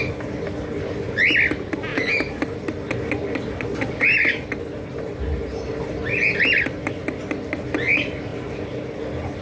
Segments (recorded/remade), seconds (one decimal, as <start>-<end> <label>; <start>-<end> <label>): 0.0-9.4 recorded